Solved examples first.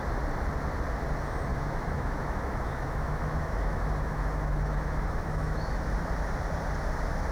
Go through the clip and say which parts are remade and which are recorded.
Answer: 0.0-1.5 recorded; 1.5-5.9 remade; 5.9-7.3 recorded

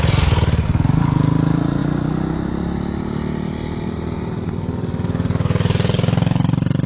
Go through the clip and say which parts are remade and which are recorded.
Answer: 0.0-6.9 recorded

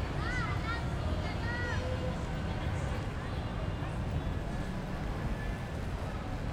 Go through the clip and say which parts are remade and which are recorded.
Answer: 0.0-6.5 recorded